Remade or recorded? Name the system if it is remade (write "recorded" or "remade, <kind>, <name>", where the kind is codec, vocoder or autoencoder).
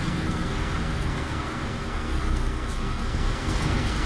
remade, codec, SNAC